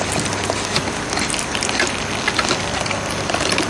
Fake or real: real